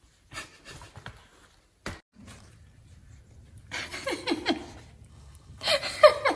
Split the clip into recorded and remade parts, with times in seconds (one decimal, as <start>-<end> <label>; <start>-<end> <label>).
0.0-5.1 recorded; 5.1-5.7 remade; 5.7-6.4 recorded